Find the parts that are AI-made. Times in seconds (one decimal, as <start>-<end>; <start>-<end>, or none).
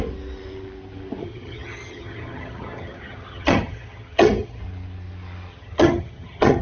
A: 1.2-4.6; 5.5-6.6